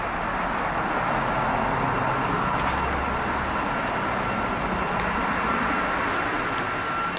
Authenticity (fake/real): real